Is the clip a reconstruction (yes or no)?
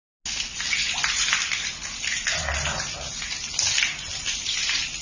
no